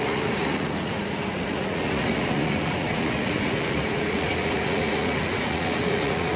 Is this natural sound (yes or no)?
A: no